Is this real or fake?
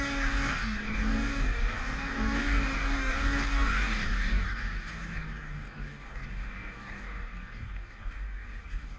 fake